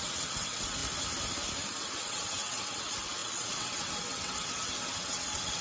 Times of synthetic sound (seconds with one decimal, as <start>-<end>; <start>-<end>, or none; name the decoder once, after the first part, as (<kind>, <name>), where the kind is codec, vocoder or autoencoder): 0.0-0.8 (vocoder, WaveNeXt); 1.9-5.6